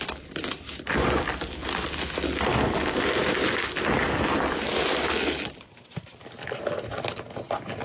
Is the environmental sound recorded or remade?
recorded